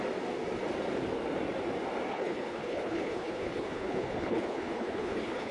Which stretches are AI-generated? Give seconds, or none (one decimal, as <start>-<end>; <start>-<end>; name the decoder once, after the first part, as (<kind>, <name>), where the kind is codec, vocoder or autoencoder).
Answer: 2.1-5.5 (codec, HILCodec)